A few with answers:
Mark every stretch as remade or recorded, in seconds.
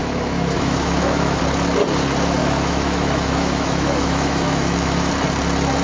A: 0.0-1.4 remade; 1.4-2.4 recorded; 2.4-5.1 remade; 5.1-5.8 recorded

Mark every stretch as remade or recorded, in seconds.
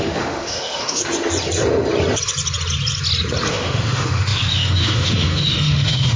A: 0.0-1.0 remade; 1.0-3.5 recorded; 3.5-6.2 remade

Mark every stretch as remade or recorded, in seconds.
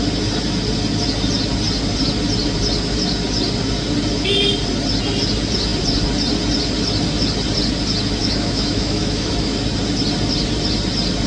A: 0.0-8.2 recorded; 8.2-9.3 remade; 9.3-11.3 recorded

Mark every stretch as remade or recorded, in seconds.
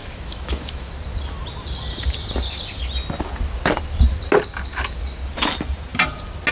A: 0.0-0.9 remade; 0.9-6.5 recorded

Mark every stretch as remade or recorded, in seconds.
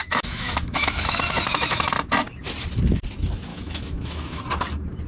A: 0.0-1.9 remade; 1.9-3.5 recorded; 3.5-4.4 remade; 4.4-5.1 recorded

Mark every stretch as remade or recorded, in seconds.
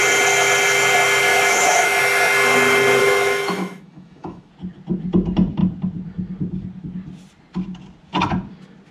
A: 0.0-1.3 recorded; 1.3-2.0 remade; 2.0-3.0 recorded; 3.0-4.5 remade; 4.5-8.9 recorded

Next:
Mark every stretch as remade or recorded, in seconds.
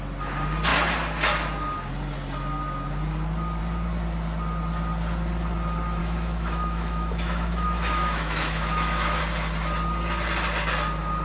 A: 0.0-6.0 recorded; 6.0-9.2 remade; 9.2-11.2 recorded